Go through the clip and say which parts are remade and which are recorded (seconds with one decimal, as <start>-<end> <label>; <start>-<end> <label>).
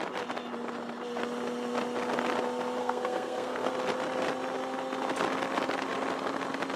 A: 0.0-2.8 recorded; 2.8-3.7 remade; 3.7-6.8 recorded